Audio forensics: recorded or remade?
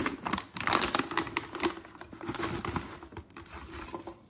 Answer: recorded